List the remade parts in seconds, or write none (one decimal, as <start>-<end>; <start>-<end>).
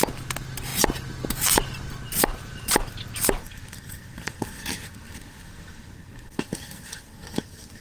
3.4-7.8